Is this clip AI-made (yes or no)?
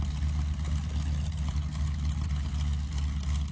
no